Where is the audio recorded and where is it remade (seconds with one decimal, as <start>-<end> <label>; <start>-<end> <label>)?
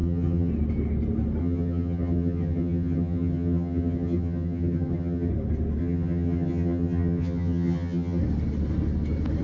0.0-0.5 remade; 0.5-1.4 recorded; 1.4-5.3 remade; 5.3-5.8 recorded; 5.8-8.2 remade; 8.2-9.4 recorded